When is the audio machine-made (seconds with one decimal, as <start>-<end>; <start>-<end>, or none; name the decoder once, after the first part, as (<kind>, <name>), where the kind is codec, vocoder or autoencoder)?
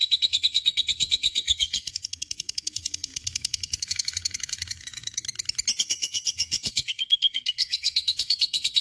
0.0-5.2 (codec, SNAC); 5.8-8.8